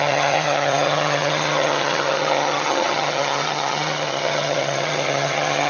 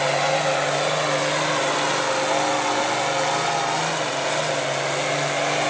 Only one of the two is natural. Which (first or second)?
second